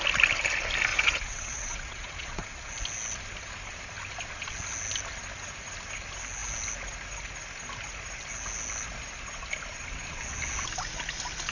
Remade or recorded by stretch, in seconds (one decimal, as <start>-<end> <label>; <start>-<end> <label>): 0.0-0.9 recorded; 0.9-2.7 remade; 2.7-11.5 recorded